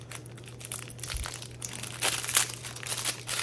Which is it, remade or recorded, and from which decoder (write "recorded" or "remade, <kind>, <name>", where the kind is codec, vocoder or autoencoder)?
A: recorded